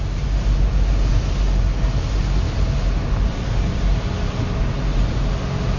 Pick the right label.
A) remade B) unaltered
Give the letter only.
B